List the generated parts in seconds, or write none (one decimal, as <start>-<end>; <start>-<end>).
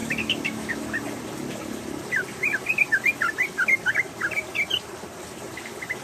0.0-0.8